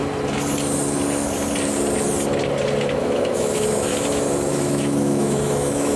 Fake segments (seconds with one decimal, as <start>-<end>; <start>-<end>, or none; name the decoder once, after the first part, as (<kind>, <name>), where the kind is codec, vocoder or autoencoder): 3.0-3.9 (autoencoder, DAC-VAE); 4.5-6.0